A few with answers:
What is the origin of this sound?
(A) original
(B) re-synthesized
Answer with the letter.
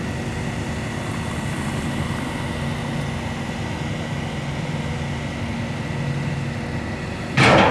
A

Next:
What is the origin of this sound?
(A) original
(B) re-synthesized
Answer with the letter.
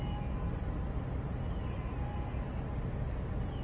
A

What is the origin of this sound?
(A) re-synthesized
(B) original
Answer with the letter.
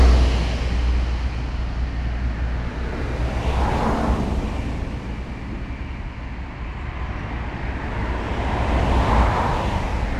B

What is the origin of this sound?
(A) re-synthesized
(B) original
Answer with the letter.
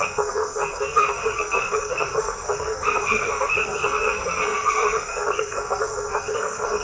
A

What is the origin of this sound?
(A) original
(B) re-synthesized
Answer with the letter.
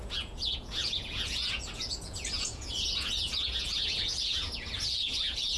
B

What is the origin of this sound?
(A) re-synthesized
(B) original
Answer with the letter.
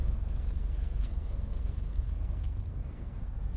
A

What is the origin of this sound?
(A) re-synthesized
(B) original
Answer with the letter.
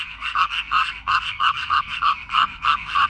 A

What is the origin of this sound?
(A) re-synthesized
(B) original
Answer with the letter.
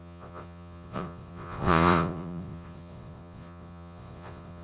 A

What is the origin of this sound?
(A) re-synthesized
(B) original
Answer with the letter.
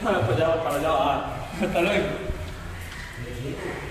A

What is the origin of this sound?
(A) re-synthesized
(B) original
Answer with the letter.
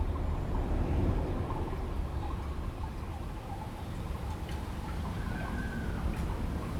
B